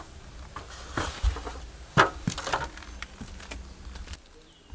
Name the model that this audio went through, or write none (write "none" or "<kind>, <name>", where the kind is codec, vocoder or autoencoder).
none